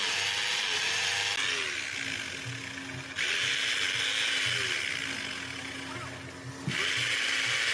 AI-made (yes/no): no